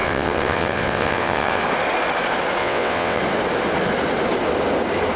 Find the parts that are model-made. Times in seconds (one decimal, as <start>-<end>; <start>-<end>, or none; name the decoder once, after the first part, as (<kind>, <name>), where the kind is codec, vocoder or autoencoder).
0.0-1.6 (vocoder, WaveNeXt); 2.6-3.2